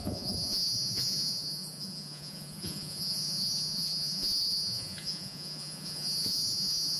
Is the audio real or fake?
fake